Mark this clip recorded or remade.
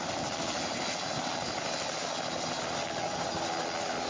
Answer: recorded